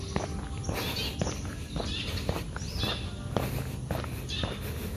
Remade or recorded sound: recorded